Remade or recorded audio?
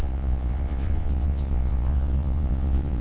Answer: remade